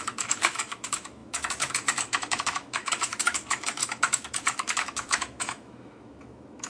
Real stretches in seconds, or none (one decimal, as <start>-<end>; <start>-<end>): none